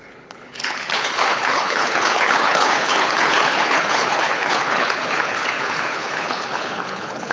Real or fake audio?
fake